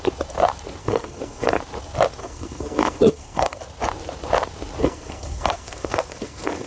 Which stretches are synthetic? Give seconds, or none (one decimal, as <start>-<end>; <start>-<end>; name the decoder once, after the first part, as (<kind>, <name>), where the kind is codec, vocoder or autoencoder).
0.8-1.6 (codec, SNAC); 2.2-3.6; 4.8-6.7